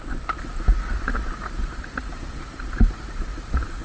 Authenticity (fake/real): fake